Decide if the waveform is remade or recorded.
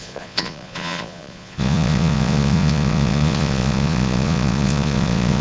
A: remade